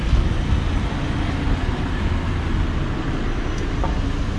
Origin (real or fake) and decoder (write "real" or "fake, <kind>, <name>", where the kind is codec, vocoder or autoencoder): real